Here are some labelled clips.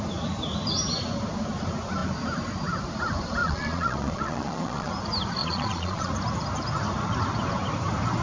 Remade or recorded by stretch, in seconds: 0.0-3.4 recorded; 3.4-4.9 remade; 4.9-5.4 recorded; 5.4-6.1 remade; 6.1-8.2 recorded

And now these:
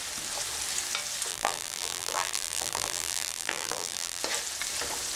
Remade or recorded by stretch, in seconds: 0.0-1.3 recorded; 1.3-4.2 remade; 4.2-5.2 recorded

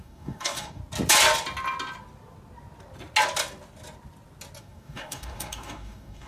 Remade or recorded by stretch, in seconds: 0.0-0.8 remade; 0.8-4.6 recorded; 4.6-6.3 remade

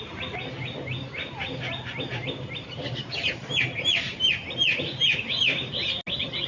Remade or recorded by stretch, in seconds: 0.0-2.1 recorded; 2.1-4.3 remade; 4.3-4.7 recorded; 4.7-5.2 remade; 5.2-6.5 recorded

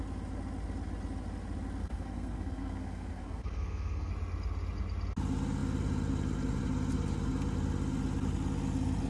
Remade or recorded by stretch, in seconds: 0.0-1.8 recorded; 1.8-4.1 remade; 4.1-9.1 recorded

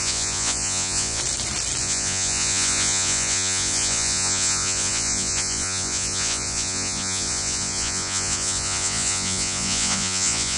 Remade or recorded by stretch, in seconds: 0.0-1.2 remade; 1.2-1.8 recorded; 1.8-10.6 remade

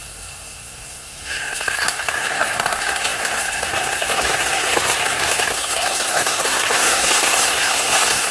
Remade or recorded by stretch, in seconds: 0.0-8.3 remade

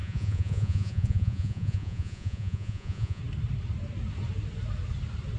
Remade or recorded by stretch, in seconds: 0.0-3.2 remade; 3.2-5.4 recorded